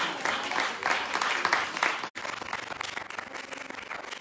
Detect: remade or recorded recorded